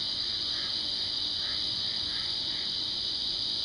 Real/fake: fake